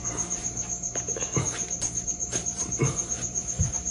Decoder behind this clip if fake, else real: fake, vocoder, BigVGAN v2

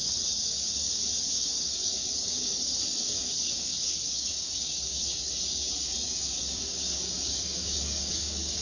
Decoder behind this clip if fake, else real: fake, codec, DAC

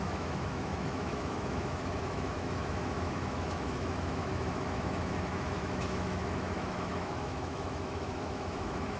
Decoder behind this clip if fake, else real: fake, autoencoder, DAC-VAE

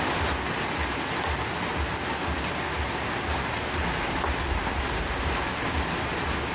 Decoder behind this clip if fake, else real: real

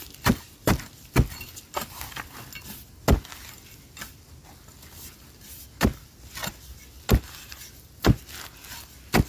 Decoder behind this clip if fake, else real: real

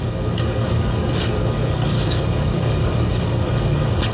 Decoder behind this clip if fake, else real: fake, codec, DAC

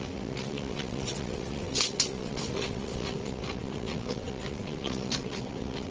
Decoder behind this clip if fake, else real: fake, vocoder, WaveNeXt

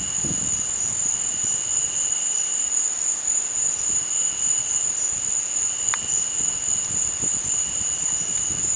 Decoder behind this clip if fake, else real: real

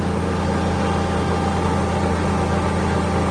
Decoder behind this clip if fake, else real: real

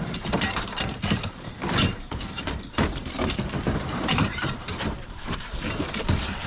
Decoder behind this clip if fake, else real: fake, vocoder, BigVGAN v2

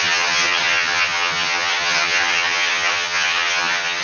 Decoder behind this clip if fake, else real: fake, vocoder, HiFi-GAN